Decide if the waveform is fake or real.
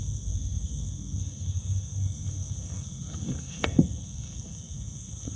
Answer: fake